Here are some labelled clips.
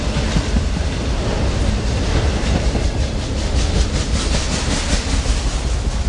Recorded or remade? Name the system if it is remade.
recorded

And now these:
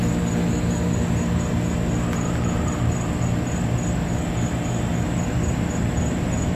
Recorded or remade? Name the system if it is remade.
recorded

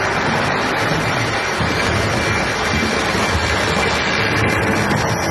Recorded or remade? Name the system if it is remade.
recorded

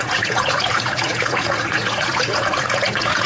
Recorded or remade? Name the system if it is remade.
remade, vocoder, Vocos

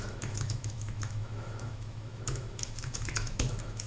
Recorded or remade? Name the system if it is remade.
remade, autoencoder, DAC-VAE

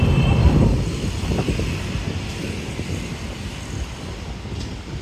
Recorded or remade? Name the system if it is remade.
recorded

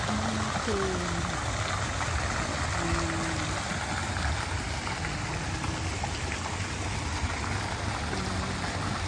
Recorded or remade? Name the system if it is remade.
recorded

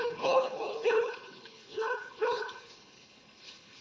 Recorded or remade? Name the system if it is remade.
remade, codec, HILCodec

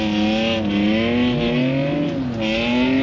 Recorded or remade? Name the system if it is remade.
recorded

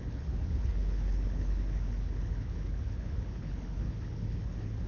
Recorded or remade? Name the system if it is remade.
remade, codec, HILCodec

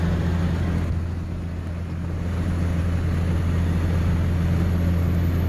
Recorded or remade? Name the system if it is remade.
recorded